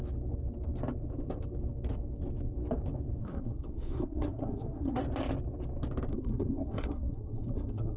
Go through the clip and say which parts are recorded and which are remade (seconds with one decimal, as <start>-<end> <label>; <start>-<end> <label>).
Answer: 0.0-3.2 recorded; 3.2-5.0 remade; 5.0-6.1 recorded; 6.1-8.0 remade